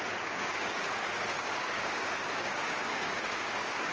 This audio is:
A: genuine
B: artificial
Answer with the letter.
B